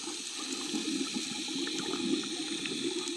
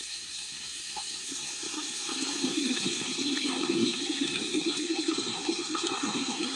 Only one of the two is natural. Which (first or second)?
first